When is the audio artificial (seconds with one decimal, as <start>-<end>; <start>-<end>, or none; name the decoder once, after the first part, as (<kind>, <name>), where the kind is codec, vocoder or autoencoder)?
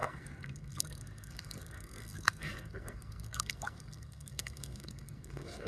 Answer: 0.0-5.7 (codec, SNAC)